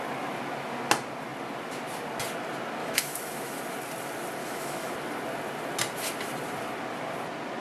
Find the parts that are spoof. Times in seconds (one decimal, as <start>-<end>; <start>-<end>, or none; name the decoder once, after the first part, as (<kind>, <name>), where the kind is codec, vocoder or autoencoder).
2.8-3.6 (autoencoder, DAC-VAE); 4.4-4.9